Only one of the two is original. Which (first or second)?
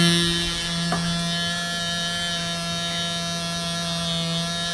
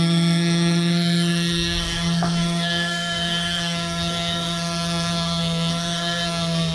first